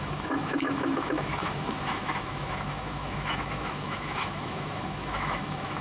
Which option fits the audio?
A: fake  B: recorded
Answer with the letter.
A